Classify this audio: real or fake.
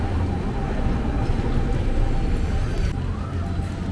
real